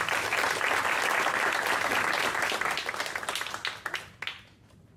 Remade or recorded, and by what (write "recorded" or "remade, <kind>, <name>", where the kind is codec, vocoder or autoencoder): recorded